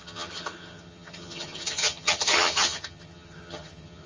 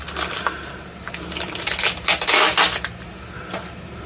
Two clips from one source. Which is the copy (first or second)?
first